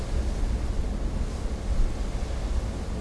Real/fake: real